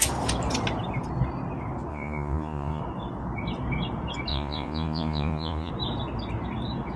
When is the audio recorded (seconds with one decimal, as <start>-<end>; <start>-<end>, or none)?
0.0-1.9; 2.8-4.3; 5.7-7.0